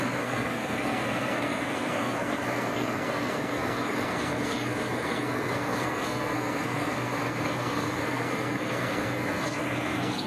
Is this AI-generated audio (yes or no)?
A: yes